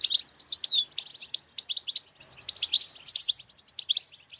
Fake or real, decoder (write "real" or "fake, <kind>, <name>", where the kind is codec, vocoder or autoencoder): real